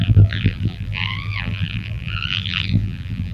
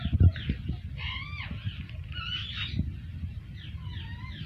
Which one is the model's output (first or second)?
first